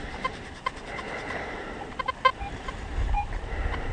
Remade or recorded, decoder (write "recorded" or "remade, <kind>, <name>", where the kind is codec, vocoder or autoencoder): remade, vocoder, BigVGAN v2